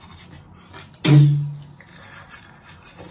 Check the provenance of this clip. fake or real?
real